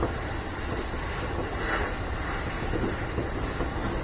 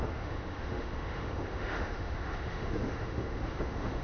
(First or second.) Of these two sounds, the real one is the first